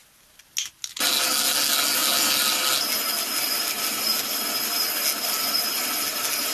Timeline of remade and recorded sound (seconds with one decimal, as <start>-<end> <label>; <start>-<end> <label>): 0.0-6.5 recorded